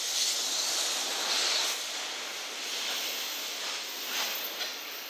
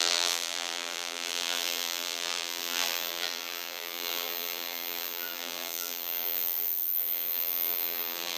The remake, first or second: second